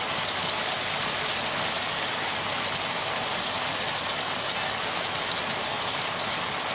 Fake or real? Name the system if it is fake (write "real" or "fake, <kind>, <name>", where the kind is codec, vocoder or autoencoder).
real